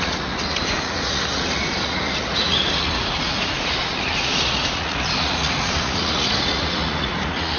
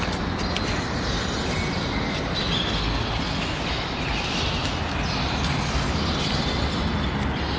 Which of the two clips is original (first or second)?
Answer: second